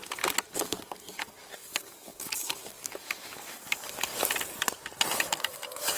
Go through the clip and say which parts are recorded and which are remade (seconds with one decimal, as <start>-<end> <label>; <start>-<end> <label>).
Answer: 0.0-0.5 recorded; 0.5-4.1 remade; 4.1-5.2 recorded; 5.2-6.0 remade